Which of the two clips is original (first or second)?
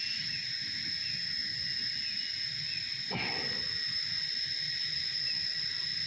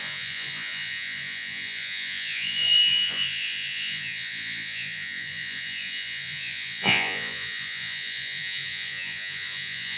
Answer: first